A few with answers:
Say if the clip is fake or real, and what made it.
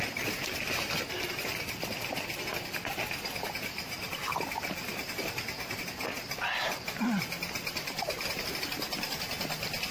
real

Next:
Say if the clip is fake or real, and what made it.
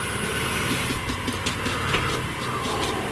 real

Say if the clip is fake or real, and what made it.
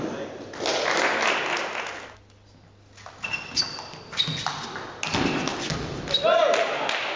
real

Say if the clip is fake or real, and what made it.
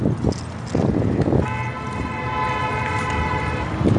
real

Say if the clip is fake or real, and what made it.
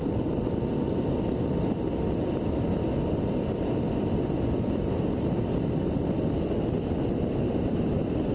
real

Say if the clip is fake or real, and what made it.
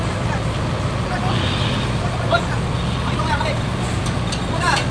real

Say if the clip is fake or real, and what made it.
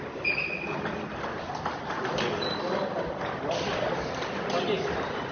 real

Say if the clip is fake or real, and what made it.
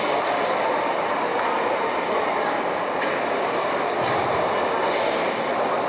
real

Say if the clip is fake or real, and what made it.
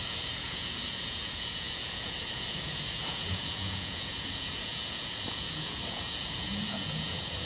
fake, vocoder, Vocos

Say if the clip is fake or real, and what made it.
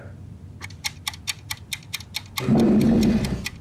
real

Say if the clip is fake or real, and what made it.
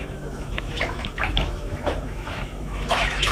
fake, autoencoder, DAC-VAE